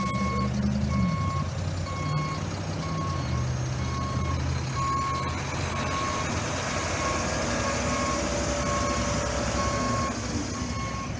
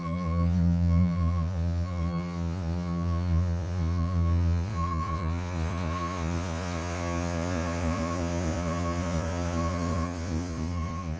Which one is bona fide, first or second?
first